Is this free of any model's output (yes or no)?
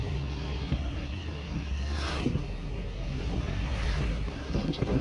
no